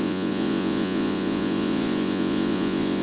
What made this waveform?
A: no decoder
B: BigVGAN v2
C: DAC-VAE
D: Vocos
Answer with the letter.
D